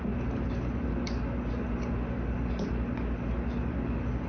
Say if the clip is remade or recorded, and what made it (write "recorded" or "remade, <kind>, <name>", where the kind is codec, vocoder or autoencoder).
recorded